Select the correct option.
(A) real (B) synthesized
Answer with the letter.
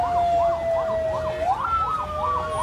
A